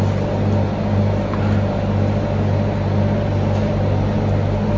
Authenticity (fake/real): real